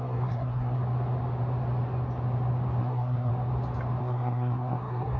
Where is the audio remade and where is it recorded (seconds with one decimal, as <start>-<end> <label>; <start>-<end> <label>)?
0.0-0.8 remade; 0.8-2.8 recorded; 2.8-3.3 remade; 3.3-4.0 recorded; 4.0-5.2 remade